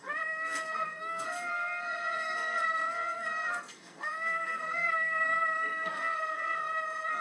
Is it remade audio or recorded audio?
remade